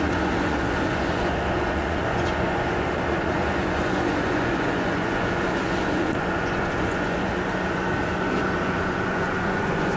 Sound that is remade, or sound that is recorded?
remade